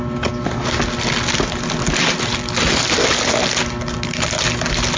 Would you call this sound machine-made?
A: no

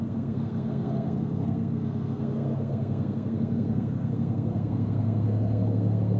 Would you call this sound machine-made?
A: yes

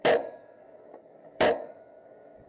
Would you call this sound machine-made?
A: yes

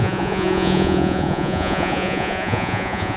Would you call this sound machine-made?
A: yes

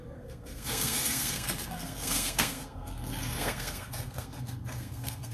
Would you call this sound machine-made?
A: yes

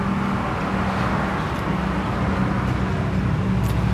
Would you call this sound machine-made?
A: no